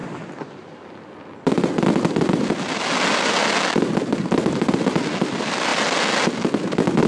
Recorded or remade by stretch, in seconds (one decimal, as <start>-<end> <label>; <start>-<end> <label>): 0.0-7.1 recorded